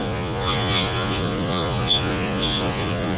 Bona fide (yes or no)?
no